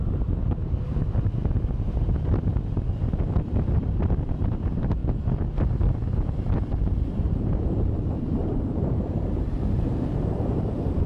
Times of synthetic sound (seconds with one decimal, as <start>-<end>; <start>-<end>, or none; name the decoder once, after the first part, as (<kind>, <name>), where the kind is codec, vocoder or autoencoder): 0.0-0.6 (vocoder, BigVGAN v2); 1.2-2.5; 4.4-5.0; 6.1-11.1